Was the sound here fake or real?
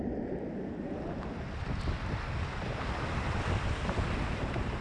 real